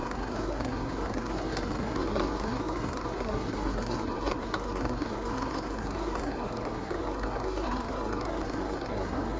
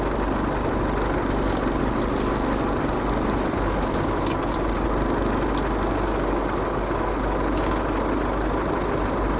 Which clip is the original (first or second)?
second